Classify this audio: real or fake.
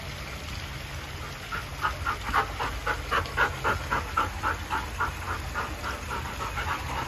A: real